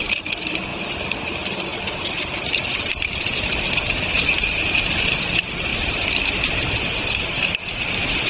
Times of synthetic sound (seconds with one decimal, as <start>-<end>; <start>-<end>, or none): 0.0-0.7; 1.2-8.3